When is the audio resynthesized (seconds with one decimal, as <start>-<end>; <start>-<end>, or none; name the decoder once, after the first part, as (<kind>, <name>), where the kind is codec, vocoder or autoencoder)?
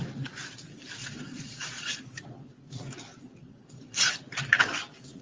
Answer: 1.0-2.0 (vocoder, Vocos); 3.4-4.1